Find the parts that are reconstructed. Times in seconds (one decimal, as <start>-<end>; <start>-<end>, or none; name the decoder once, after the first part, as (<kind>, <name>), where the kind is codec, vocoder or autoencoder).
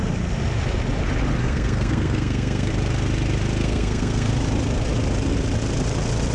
1.4-2.7 (codec, SNAC); 3.6-4.3